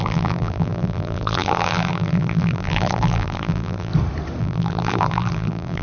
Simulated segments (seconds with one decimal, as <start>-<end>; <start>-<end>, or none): 0.0-3.9; 4.4-5.8